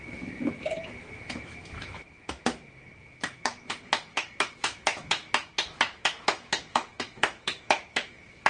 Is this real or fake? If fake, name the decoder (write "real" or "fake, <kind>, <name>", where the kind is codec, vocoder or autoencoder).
fake, autoencoder, DAC-VAE